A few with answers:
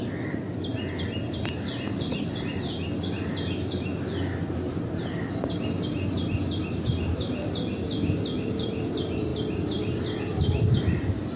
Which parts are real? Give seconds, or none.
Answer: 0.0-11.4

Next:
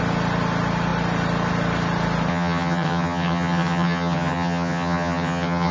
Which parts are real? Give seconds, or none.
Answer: 0.0-2.3

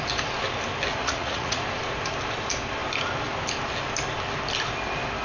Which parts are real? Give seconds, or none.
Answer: 0.0-1.0; 1.6-5.2

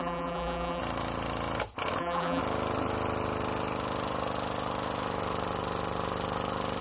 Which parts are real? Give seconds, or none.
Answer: 0.8-2.0; 2.4-6.8

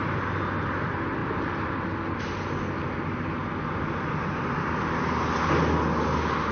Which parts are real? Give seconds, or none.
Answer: 0.0-6.5

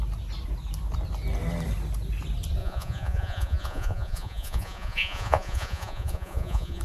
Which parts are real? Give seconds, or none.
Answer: 0.0-2.6

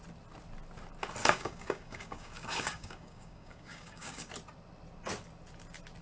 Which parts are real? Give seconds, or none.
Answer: 0.0-1.2; 4.3-6.0

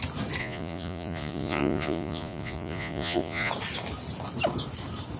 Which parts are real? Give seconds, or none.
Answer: 0.0-0.4; 3.5-5.2